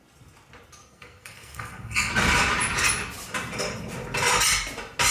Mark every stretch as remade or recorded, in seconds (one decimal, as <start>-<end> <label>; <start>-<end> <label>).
0.0-0.8 recorded; 0.8-2.1 remade; 2.1-5.1 recorded